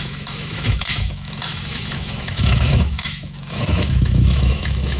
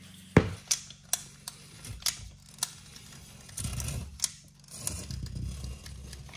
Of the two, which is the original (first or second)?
second